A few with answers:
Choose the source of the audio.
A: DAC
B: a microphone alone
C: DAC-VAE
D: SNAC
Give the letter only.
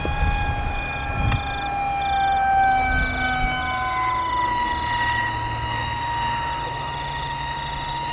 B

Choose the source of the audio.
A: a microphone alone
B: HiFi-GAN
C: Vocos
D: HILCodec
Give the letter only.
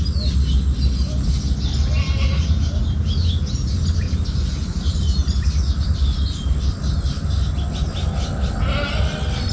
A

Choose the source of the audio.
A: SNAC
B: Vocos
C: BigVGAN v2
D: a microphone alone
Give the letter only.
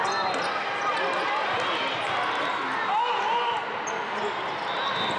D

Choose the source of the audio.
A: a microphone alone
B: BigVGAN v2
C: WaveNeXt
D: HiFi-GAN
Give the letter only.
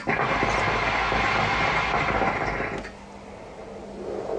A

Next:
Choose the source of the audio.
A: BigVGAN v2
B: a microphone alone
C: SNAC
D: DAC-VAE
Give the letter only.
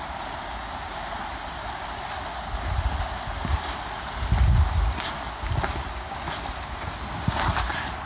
A